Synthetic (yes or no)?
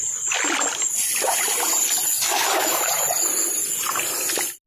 no